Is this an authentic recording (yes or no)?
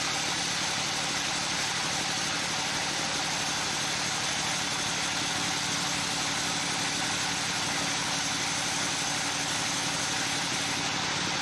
yes